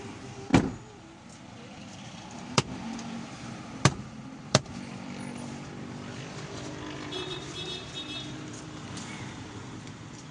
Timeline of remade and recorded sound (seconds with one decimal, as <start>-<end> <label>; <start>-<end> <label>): 0.0-10.3 remade